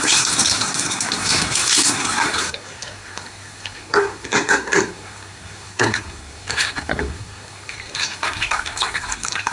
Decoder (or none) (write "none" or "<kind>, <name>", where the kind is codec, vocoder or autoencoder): codec, SNAC